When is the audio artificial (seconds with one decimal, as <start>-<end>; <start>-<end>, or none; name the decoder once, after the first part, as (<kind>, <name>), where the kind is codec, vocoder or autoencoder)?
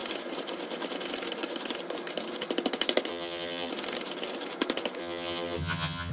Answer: 3.1-3.7 (vocoder, HiFi-GAN); 5.0-6.1